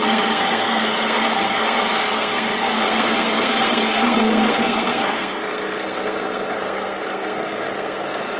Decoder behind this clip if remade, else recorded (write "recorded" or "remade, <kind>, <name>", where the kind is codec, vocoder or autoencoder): remade, codec, SNAC